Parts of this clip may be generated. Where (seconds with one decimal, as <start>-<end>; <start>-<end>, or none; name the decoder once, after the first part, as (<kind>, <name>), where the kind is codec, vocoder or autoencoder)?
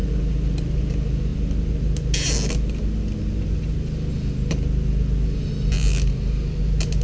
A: none